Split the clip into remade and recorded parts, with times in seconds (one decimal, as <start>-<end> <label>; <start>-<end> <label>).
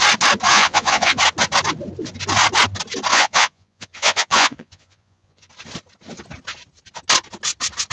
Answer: 0.0-0.5 recorded; 0.5-1.2 remade; 1.2-3.1 recorded; 3.1-5.5 remade; 5.5-7.9 recorded